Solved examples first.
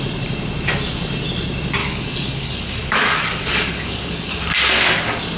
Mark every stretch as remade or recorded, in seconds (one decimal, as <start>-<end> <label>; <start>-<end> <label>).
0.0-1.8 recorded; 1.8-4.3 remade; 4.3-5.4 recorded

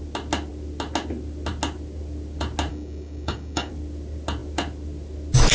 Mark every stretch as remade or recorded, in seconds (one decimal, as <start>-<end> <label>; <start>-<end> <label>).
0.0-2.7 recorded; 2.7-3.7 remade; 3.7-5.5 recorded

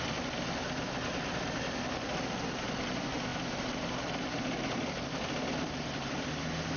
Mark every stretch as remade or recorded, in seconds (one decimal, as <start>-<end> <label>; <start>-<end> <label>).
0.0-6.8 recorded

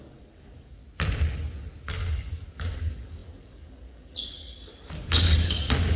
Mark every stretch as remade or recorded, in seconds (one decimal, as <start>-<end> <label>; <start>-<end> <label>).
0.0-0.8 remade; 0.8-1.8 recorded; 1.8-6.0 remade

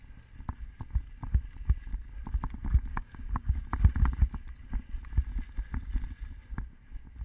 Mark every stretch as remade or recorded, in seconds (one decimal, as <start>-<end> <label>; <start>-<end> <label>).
0.0-2.9 recorded; 2.9-3.6 remade; 3.6-7.2 recorded

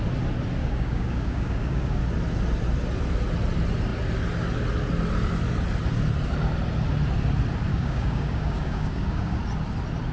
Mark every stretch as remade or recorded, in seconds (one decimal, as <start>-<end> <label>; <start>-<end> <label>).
0.0-0.6 recorded; 0.6-2.0 remade; 2.0-7.7 recorded; 7.7-9.4 remade; 9.4-10.1 recorded

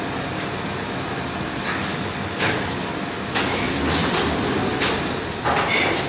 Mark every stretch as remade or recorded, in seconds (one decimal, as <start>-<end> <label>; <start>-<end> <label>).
0.0-1.9 recorded; 1.9-2.9 remade; 2.9-6.1 recorded